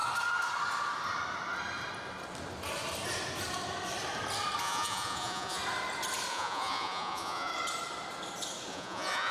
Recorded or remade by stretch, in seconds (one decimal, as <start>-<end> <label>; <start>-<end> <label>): 0.0-4.6 recorded; 4.6-5.6 remade; 5.6-6.3 recorded; 6.3-7.5 remade; 7.5-8.7 recorded; 8.7-9.3 remade